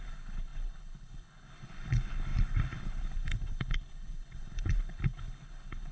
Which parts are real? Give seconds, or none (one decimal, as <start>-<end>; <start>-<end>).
none